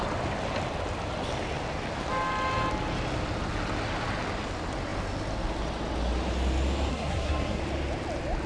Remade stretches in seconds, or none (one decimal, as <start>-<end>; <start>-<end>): 6.9-7.6